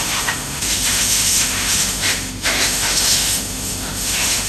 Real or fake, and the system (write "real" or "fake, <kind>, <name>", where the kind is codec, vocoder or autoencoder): fake, autoencoder, DAC-VAE